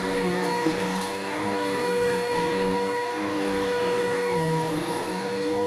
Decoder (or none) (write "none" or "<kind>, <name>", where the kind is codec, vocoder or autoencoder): codec, DAC